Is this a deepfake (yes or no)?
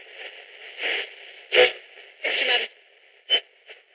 no